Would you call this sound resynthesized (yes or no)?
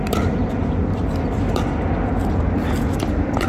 no